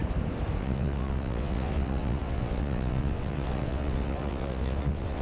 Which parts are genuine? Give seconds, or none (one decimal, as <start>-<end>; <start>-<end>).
0.0-0.6